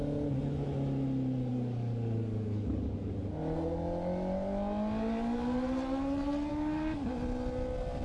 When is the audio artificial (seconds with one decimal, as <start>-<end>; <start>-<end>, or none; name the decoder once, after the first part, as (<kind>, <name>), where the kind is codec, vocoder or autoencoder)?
1.5-3.1 (codec, DAC); 6.5-7.1

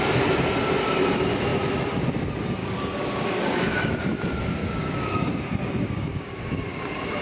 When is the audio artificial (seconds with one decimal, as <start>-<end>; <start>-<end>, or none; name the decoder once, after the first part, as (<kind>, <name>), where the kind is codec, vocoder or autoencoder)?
2.6-4.0 (codec, DAC); 4.6-6.5

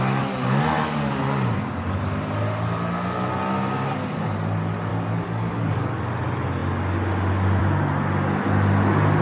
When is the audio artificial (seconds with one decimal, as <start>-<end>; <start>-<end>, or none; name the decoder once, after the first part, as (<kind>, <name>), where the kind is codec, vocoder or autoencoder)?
4.9-6.0 (codec, DAC)

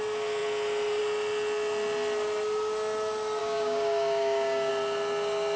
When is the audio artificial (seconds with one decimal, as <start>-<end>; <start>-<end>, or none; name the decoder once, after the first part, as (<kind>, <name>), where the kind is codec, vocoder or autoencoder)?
3.4-4.7 (codec, DAC)

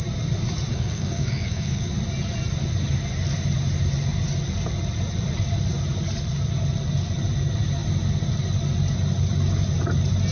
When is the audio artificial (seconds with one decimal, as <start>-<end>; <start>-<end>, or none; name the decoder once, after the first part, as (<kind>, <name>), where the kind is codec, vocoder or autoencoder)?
0.7-1.9 (codec, DAC)

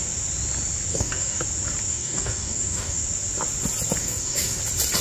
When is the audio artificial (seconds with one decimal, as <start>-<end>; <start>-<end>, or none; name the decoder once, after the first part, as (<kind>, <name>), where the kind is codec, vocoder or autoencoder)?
0.9-1.4 (codec, DAC); 1.9-3.0; 4.0-4.6

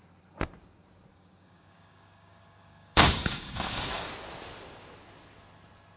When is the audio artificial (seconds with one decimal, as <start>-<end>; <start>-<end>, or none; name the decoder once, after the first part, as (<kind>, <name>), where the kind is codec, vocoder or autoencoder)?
1.1-4.1 (codec, DAC)

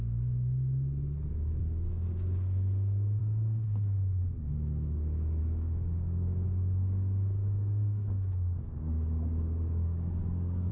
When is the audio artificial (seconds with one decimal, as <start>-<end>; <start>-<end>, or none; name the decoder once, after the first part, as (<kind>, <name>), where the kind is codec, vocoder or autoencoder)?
1.6-3.2 (codec, DAC); 5.4-10.7